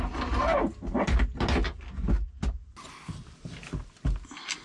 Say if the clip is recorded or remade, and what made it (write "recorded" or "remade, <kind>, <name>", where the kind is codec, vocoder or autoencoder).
recorded